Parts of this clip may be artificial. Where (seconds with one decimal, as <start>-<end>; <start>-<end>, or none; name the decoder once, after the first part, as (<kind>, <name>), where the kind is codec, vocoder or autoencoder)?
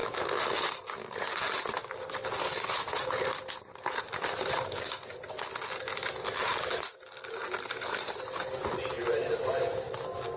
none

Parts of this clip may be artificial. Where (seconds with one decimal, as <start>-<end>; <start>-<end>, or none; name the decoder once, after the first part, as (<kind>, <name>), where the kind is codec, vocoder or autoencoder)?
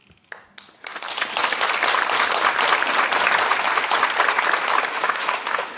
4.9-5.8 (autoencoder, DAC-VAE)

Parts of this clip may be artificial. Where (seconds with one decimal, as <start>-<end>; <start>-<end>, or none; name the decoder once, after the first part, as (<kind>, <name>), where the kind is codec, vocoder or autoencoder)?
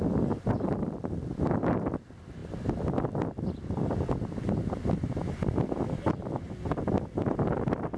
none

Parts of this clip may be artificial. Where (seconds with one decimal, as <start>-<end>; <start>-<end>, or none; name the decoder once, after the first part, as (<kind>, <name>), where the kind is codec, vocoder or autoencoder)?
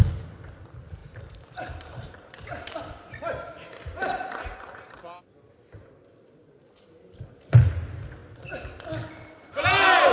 1.0-5.2 (vocoder, BigVGAN v2)